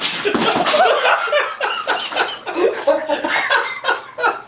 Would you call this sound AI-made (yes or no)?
no